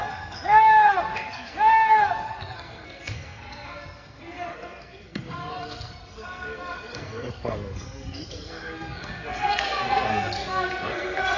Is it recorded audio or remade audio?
remade